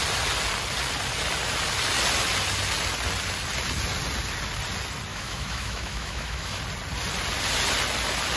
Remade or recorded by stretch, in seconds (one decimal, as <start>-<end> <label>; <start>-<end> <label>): 0.0-5.1 recorded; 5.1-6.6 remade; 6.6-8.4 recorded